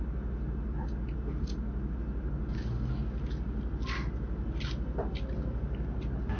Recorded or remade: recorded